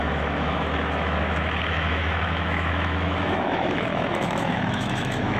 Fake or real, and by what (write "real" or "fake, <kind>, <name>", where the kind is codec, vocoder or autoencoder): fake, autoencoder, DAC-VAE